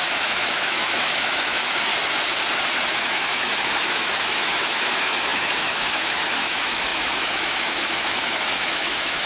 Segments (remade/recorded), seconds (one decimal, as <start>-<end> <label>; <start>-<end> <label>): 0.0-1.9 remade; 1.9-2.9 recorded; 2.9-9.3 remade